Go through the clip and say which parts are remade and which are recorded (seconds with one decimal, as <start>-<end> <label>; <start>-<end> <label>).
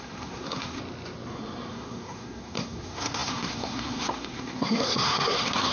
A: 0.0-0.8 remade; 0.8-1.7 recorded; 1.7-5.7 remade